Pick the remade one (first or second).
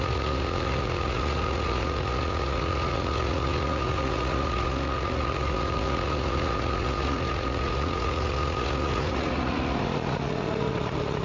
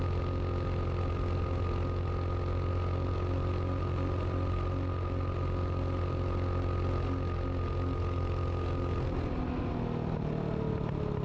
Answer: first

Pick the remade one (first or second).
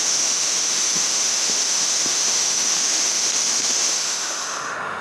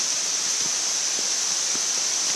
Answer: first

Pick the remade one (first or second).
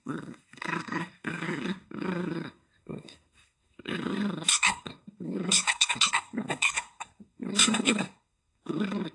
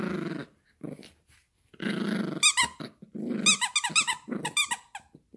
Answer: first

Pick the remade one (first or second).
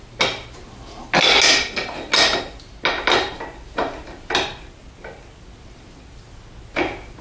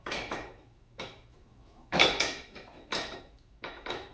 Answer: second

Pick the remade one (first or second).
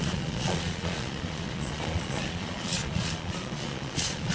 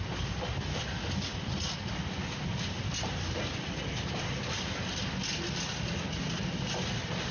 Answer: first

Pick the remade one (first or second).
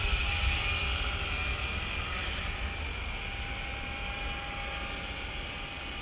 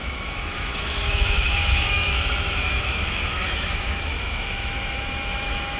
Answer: second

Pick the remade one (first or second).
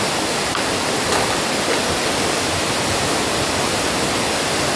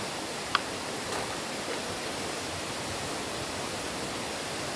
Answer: second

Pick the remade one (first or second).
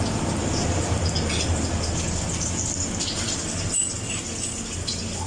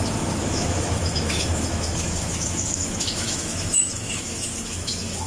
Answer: second